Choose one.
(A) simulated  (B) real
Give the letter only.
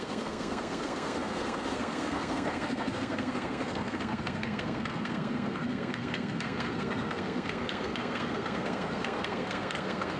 A